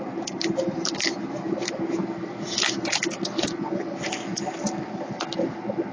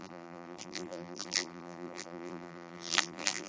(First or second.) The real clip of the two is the first